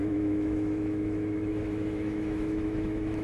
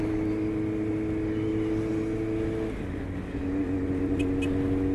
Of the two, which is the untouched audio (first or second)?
second